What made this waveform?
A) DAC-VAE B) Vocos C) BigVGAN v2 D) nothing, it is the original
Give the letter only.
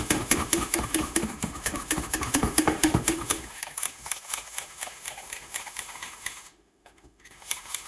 A